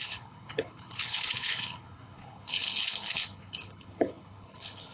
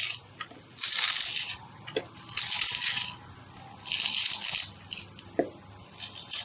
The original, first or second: second